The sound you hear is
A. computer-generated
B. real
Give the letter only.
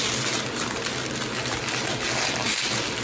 B